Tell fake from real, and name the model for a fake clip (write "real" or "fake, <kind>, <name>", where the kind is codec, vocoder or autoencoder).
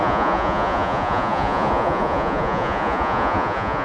fake, vocoder, Vocos